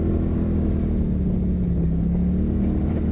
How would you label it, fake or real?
real